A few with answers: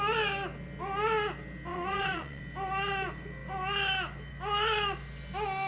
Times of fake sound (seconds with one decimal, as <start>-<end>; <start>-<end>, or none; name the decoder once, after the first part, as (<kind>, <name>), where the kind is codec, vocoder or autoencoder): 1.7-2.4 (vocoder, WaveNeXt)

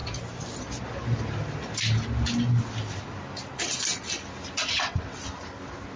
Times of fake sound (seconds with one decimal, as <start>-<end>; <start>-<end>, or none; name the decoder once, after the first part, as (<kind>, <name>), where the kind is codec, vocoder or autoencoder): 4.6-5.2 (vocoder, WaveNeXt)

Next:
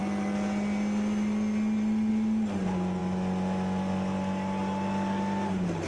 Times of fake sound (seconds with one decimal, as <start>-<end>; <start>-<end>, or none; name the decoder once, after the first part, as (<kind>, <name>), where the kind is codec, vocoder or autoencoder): none

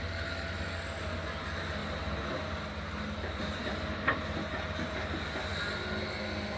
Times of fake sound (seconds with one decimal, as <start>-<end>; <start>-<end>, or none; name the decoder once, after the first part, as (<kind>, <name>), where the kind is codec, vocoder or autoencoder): none

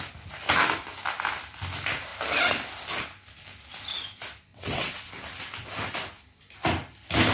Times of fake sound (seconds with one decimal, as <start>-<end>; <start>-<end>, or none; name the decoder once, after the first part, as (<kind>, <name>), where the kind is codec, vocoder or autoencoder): 4.5-5.1 (vocoder, WaveNeXt)

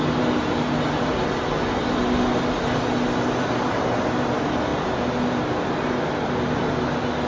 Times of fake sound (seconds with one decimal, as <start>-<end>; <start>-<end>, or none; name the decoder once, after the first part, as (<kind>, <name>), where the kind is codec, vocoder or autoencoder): none

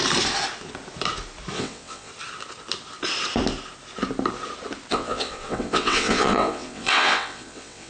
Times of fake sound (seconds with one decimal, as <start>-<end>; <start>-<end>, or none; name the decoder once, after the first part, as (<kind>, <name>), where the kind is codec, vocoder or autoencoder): 1.5-2.1 (vocoder, WaveNeXt); 4.9-7.9

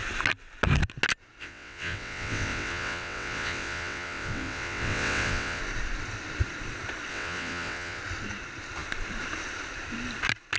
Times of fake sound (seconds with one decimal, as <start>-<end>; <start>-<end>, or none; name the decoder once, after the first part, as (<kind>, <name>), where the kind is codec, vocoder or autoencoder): 1.4-5.6 (vocoder, WaveNeXt); 7.1-8.0